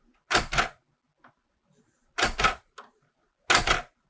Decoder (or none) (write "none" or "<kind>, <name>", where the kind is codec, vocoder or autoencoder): none